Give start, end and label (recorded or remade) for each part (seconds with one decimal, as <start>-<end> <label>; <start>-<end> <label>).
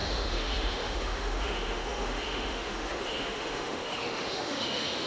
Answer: 0.0-5.1 remade